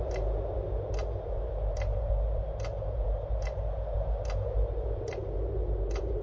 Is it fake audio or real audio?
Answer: real